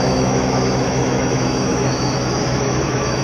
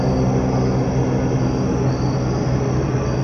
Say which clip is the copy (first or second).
first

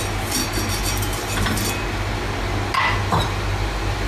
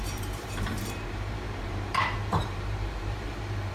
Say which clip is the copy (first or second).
second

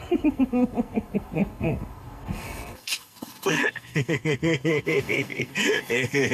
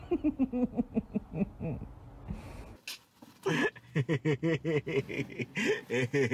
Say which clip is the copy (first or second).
first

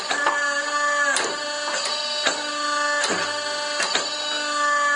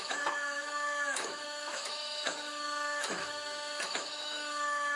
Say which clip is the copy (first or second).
second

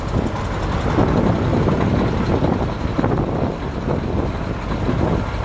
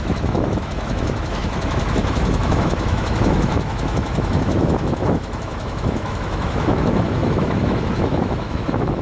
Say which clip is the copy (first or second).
second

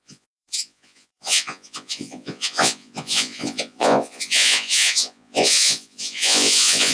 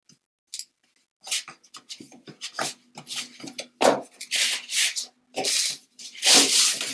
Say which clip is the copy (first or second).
first